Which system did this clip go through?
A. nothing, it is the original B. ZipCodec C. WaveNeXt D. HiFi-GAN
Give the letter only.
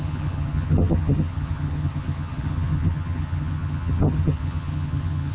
D